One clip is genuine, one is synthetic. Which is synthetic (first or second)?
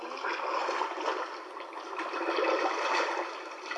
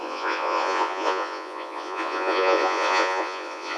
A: second